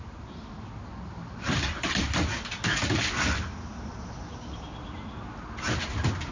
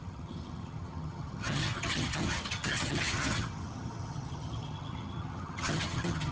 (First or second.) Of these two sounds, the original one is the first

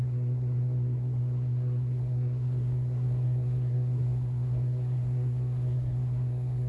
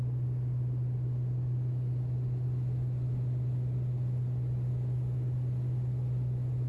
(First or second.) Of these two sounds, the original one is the second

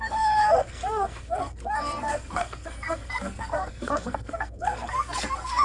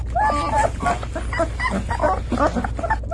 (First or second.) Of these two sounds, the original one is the second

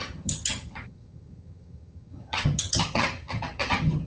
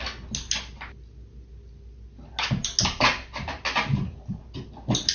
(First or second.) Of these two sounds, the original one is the second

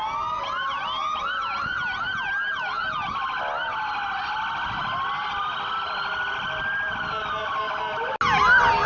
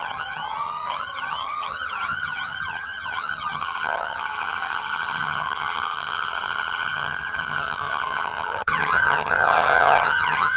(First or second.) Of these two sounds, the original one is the first